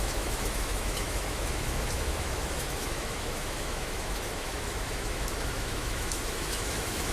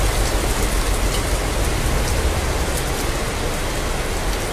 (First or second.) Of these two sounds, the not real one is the first